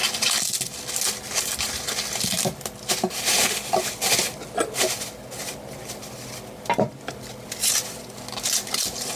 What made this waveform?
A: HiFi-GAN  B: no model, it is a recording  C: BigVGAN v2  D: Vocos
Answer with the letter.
B